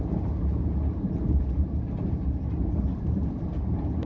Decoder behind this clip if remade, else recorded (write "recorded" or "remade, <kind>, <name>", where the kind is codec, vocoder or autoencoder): remade, vocoder, BigVGAN v2